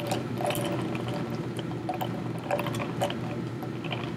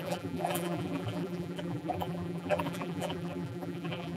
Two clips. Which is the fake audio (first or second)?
second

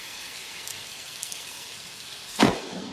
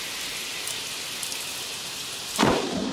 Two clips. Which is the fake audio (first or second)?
first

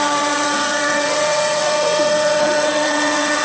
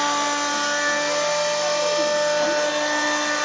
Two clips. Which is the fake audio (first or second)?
first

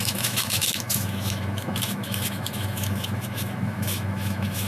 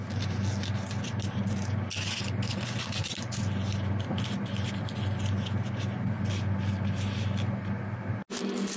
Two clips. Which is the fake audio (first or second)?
first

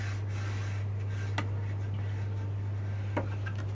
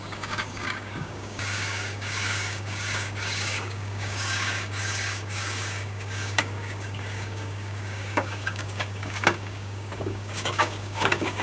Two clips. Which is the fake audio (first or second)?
second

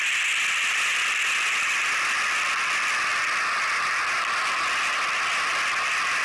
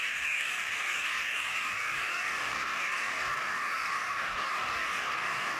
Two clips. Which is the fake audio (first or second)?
second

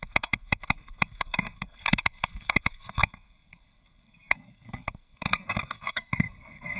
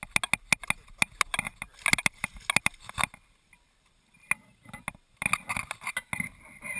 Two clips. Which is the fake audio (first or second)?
first